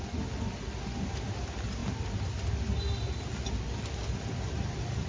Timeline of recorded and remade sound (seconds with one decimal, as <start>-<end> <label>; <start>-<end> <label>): 0.0-5.1 recorded